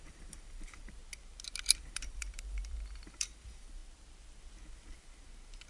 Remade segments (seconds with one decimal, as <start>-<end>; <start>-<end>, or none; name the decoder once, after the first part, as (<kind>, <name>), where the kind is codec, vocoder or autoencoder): 0.0-1.0 (vocoder, BigVGAN v2); 1.8-3.8